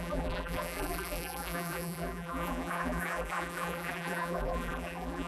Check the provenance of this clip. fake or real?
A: fake